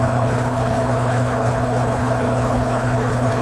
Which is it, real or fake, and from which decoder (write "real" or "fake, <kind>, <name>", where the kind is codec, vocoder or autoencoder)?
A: fake, codec, HILCodec